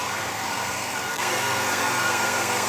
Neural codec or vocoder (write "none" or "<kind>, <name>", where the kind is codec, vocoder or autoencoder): codec, SNAC